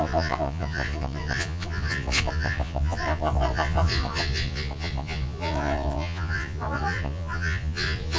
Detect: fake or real fake